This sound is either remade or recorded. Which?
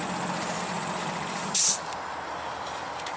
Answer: recorded